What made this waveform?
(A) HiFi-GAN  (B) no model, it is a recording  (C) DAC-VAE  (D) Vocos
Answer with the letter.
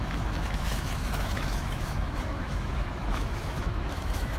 C